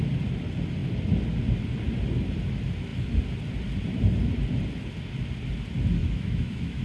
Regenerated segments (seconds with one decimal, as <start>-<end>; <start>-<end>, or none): 6.0-6.8